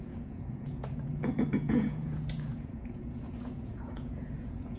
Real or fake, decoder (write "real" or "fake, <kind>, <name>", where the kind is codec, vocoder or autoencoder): fake, vocoder, Vocos